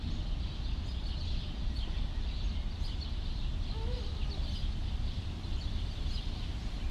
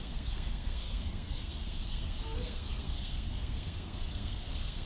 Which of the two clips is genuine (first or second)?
first